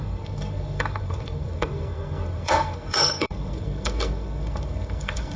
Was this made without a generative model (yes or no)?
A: no